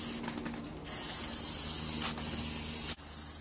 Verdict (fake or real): real